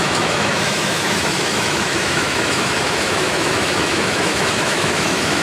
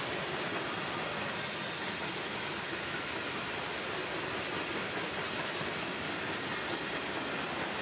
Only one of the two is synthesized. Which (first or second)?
first